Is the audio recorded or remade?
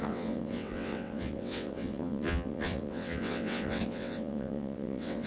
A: remade